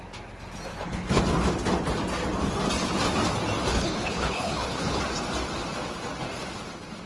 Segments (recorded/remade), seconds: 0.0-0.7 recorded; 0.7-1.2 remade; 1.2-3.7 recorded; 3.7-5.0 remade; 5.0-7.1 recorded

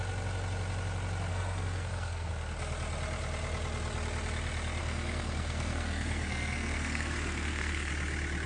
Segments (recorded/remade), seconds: 0.0-1.3 recorded; 1.3-2.3 remade; 2.3-4.8 recorded; 4.8-7.9 remade; 7.9-8.5 recorded